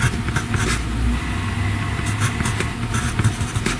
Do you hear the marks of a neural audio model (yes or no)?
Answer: no